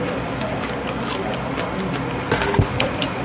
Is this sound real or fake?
real